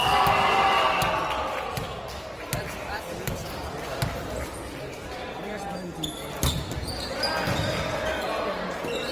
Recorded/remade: recorded